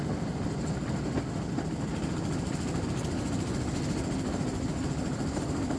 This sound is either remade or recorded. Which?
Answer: recorded